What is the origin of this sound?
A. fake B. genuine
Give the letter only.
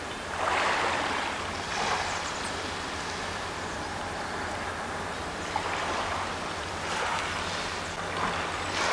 B